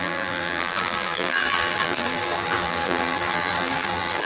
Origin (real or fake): fake